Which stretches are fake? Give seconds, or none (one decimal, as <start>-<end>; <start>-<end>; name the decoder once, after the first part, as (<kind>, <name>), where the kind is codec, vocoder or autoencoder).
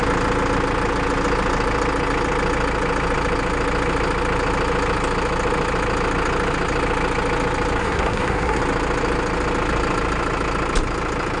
7.8-8.6 (codec, SNAC)